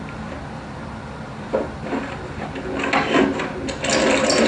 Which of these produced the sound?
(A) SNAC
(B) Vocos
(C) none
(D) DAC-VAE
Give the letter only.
C